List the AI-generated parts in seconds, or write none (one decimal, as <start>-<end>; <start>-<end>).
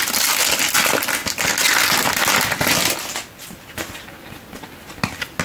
none